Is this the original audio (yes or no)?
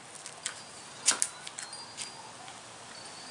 yes